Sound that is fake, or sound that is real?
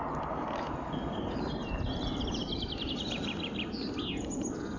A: real